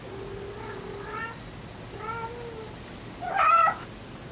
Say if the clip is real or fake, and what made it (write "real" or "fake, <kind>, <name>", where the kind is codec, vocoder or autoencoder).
real